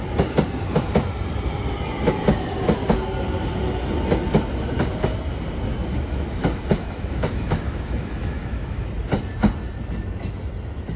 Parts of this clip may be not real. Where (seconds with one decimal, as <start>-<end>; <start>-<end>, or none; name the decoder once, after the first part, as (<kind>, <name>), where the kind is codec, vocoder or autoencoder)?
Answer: 5.7-8.9 (autoencoder, DAC-VAE)

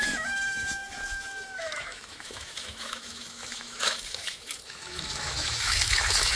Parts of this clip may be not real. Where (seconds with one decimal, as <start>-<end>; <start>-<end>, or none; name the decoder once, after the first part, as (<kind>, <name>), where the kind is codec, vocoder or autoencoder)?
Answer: 0.0-6.4 (autoencoder, DAC-VAE)